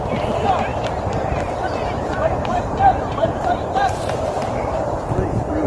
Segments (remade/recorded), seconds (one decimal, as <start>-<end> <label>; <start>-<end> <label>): 0.0-1.8 recorded; 1.8-5.1 remade; 5.1-5.7 recorded